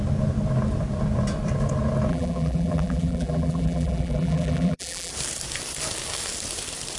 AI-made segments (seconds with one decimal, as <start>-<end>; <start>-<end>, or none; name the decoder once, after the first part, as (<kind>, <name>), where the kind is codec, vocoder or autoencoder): 2.1-5.1 (vocoder, BigVGAN v2)